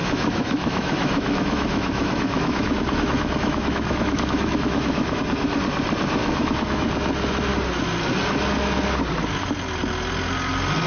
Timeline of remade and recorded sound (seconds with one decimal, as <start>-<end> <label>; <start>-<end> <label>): 0.0-5.2 remade; 5.2-6.2 recorded; 6.2-6.9 remade; 6.9-10.9 recorded